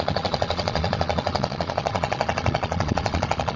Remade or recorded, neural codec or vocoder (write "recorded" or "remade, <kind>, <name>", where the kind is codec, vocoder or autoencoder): remade, vocoder, Vocos